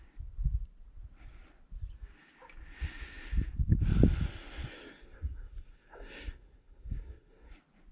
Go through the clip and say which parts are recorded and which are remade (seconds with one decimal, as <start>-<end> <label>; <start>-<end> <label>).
0.0-4.7 recorded; 4.7-7.5 remade; 7.5-7.9 recorded